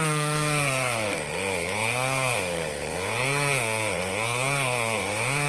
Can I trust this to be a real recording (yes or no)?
no